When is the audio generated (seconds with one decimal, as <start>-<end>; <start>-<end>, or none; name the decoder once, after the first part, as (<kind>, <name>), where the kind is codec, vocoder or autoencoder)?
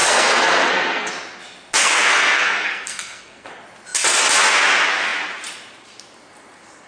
0.0-1.1 (codec, SNAC); 1.8-3.5